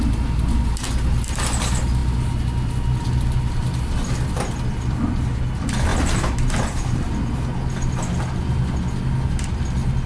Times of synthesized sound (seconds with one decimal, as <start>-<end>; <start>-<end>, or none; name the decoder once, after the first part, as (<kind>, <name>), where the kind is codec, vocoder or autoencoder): none